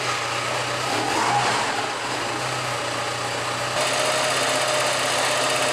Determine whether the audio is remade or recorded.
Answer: recorded